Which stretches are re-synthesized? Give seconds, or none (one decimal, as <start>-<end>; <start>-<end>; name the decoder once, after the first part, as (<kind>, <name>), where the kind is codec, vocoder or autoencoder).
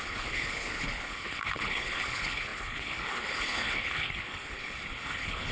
0.0-5.5 (codec, HILCodec)